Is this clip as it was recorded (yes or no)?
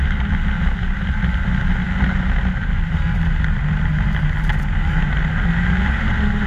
yes